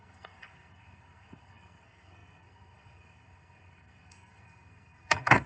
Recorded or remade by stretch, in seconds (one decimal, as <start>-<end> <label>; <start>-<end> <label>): 0.0-5.5 remade